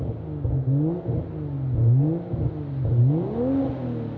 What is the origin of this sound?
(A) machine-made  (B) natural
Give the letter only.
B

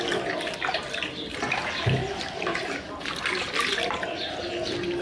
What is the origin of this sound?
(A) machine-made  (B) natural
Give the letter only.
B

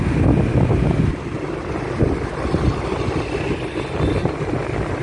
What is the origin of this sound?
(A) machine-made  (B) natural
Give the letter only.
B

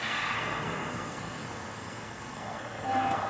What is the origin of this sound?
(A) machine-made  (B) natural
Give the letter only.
A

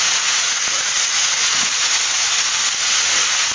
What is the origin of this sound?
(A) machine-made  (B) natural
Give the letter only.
A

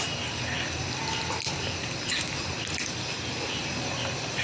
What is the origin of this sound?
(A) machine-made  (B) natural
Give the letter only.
B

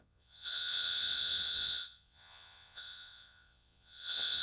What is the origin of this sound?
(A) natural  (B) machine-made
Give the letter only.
B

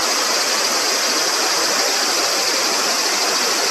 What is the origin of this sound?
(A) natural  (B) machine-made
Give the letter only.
B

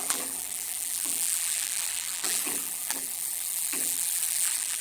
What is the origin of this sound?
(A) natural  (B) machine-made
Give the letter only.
B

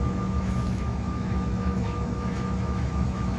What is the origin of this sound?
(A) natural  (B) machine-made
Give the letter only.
B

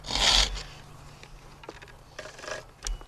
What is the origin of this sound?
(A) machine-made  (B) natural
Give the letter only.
B